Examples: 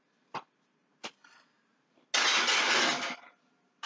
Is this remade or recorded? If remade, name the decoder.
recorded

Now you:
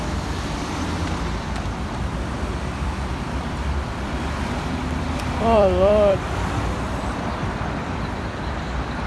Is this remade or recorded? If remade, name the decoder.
remade, vocoder, BigVGAN v2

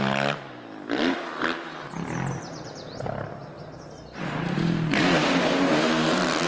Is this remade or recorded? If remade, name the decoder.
recorded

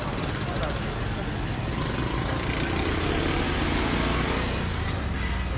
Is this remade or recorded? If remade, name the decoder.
recorded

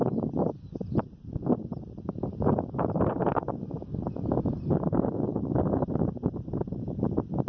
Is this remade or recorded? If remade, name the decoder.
remade, vocoder, BigVGAN v2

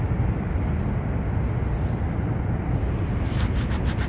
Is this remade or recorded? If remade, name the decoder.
recorded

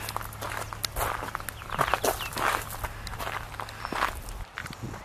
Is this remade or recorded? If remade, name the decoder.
recorded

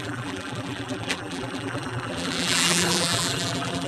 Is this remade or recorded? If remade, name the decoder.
remade, vocoder, BigVGAN v2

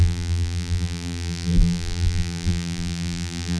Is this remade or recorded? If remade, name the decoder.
remade, vocoder, BigVGAN v2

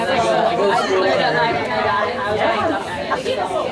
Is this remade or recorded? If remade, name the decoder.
remade, vocoder, BigVGAN v2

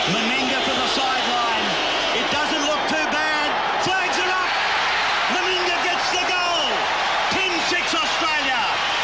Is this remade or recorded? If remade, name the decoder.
recorded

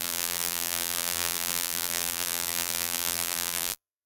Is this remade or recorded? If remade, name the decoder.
remade, vocoder, BigVGAN v2